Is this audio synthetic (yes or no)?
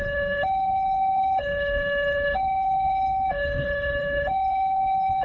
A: yes